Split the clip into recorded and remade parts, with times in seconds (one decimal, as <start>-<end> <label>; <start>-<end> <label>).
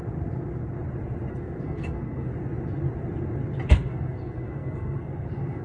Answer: 0.0-1.3 recorded; 1.3-2.3 remade; 2.3-3.7 recorded; 3.7-5.6 remade